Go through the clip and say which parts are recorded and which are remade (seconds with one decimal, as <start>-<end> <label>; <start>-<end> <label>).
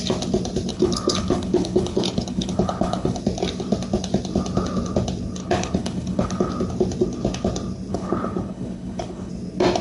0.0-0.7 recorded; 0.7-3.2 remade; 3.2-5.4 recorded; 5.4-6.5 remade; 6.5-7.9 recorded; 7.9-9.3 remade; 9.3-9.8 recorded